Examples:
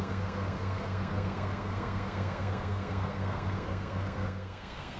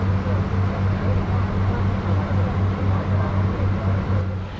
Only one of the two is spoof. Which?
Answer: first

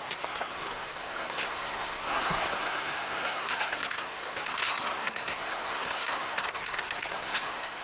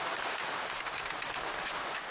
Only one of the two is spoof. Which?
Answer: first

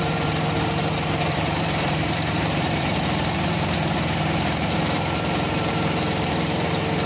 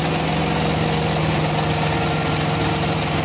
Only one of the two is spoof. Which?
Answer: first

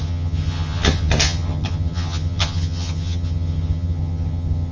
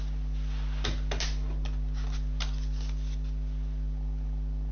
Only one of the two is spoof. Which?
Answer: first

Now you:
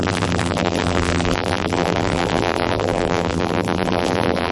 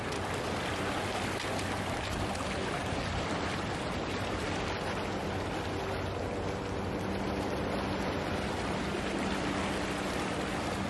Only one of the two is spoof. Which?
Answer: first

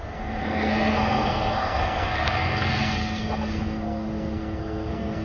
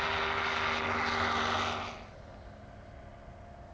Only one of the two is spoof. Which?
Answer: first